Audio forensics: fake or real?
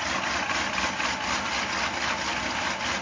real